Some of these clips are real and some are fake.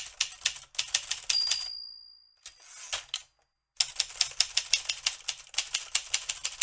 real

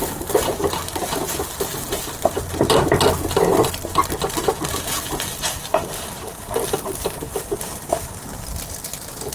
real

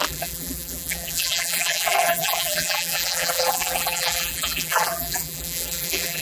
fake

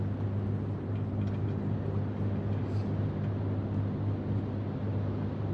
real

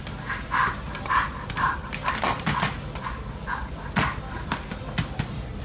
fake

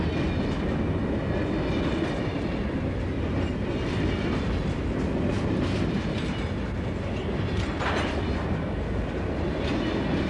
real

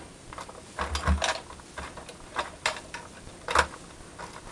real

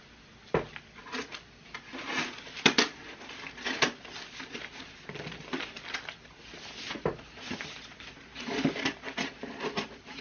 real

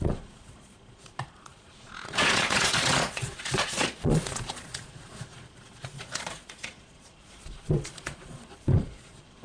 fake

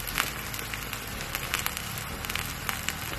real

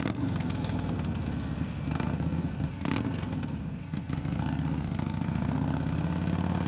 fake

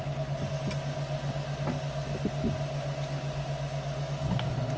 real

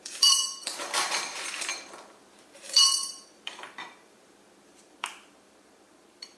fake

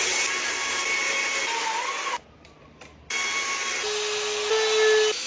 real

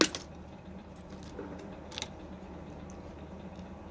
real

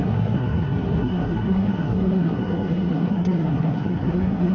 fake